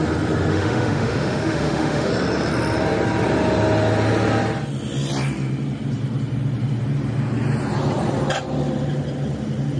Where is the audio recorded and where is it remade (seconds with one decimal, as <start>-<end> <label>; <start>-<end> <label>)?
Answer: 0.0-0.5 recorded; 0.5-2.1 remade; 2.1-9.8 recorded